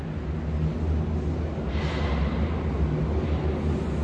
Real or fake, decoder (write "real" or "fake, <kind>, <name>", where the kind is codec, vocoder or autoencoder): real